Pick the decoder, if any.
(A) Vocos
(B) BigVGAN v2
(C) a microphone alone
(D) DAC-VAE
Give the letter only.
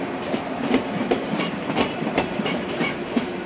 B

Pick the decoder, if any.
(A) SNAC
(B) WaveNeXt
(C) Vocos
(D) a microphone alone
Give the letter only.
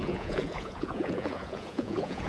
C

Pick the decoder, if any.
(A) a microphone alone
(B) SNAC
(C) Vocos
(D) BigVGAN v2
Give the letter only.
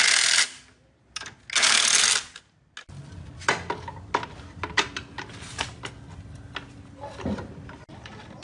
A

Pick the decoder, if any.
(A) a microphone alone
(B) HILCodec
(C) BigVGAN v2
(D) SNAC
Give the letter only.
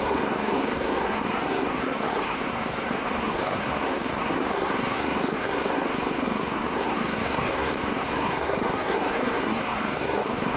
D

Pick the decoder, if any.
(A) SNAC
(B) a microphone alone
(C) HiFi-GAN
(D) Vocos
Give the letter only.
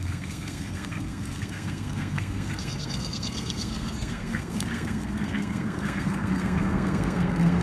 A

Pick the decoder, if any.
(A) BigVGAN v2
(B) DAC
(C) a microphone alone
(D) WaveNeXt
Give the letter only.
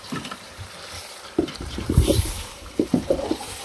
A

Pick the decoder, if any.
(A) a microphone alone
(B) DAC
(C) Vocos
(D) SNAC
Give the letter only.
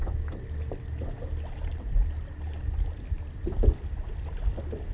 A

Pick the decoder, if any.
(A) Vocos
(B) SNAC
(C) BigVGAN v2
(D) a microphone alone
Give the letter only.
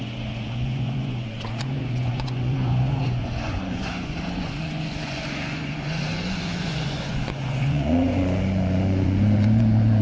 A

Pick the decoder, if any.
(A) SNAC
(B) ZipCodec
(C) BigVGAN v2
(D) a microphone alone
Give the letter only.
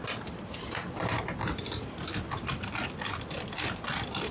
C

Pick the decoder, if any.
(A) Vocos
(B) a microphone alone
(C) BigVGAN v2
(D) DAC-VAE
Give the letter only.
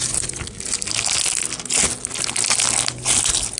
B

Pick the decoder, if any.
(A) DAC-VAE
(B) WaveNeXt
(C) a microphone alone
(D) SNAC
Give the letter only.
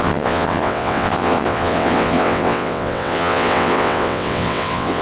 B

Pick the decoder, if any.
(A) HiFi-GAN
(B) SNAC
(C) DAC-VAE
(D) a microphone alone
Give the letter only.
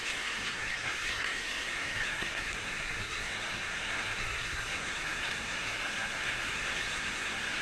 B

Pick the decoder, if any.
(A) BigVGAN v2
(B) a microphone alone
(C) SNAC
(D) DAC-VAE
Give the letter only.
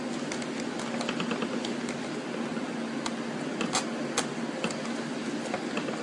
B